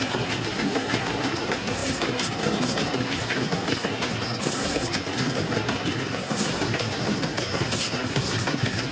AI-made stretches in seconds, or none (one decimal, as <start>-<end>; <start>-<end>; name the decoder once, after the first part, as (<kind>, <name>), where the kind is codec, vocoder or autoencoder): 0.0-8.9 (codec, SNAC)